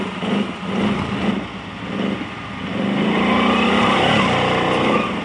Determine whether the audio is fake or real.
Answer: real